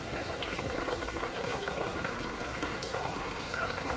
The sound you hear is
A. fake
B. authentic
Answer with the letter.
A